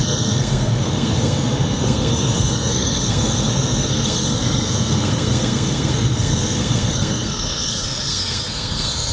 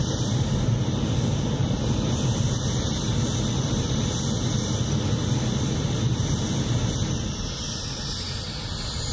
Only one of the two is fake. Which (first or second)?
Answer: first